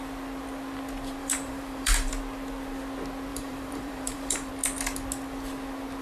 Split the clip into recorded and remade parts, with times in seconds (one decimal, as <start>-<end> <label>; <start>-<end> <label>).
0.0-1.2 recorded; 1.2-2.1 remade; 2.1-3.3 recorded; 3.3-4.5 remade; 4.5-6.0 recorded